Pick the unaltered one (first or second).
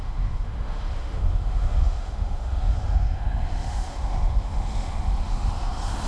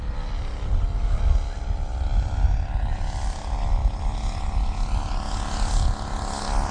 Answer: second